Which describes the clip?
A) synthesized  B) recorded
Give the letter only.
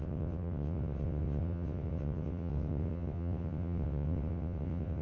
A